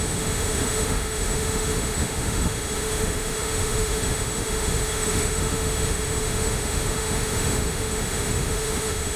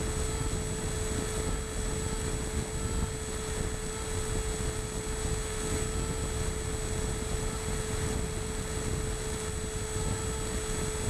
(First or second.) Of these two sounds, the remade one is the first